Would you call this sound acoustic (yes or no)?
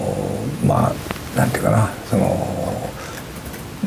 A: yes